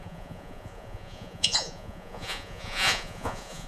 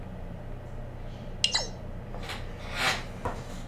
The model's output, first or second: first